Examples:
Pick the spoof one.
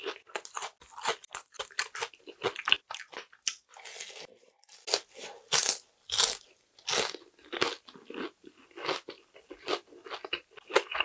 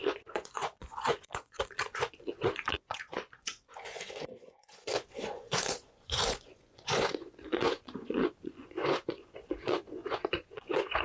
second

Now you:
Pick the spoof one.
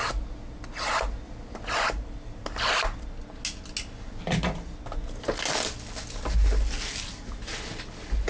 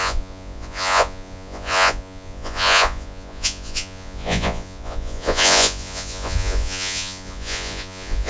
second